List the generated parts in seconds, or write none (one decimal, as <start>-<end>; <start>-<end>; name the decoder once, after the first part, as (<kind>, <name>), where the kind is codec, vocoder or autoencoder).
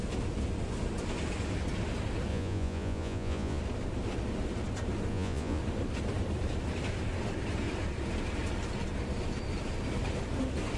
2.3-3.6 (vocoder, Vocos); 5.1-5.6